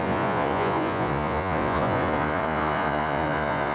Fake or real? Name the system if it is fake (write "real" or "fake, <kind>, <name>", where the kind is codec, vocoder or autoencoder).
fake, vocoder, Vocos